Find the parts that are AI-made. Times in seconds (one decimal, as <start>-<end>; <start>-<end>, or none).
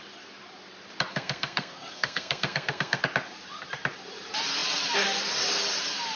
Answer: 1.1-3.0